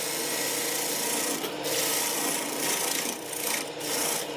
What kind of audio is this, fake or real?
real